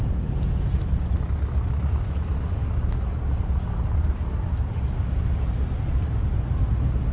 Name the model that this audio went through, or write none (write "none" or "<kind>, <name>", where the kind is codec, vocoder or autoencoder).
none